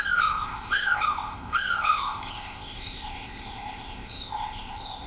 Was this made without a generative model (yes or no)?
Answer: no